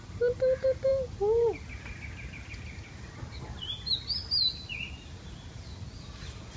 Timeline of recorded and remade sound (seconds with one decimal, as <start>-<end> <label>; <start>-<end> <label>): 0.0-6.6 recorded